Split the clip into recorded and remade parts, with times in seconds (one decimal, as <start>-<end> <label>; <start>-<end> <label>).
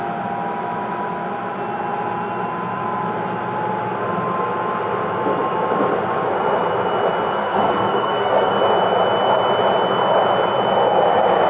0.0-7.4 recorded; 7.4-8.5 remade; 8.5-11.5 recorded